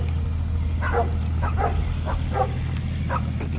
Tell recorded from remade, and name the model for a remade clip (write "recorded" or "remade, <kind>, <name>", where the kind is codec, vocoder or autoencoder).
recorded